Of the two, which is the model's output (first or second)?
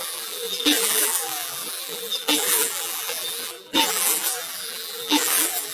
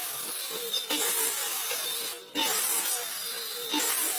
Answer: first